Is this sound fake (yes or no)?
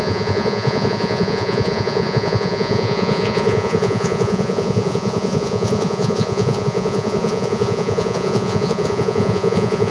yes